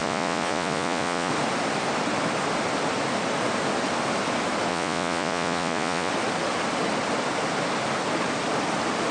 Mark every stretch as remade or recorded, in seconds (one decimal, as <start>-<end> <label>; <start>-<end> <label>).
0.0-1.3 remade; 1.3-4.7 recorded; 4.7-6.1 remade; 6.1-9.1 recorded